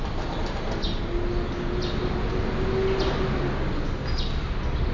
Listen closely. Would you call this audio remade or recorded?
recorded